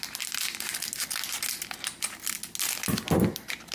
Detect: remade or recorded recorded